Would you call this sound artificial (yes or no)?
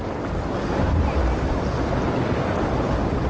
no